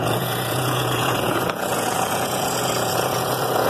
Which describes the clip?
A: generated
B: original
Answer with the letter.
A